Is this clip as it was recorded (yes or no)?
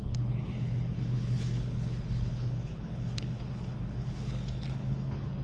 no